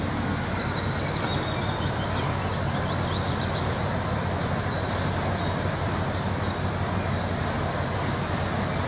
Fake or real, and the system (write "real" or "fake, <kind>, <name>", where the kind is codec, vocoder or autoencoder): real